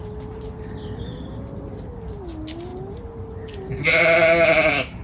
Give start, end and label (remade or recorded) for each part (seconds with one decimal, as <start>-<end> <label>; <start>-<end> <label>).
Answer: 0.0-5.0 recorded